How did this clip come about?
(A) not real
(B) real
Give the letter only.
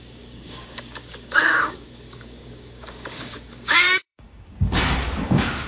A